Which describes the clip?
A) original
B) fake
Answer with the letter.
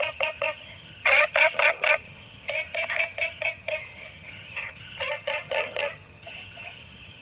B